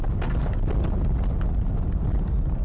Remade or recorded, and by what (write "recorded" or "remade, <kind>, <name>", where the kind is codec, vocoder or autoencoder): recorded